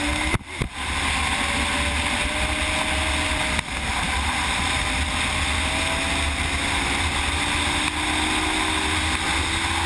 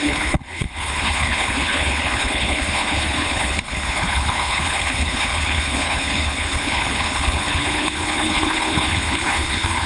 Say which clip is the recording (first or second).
first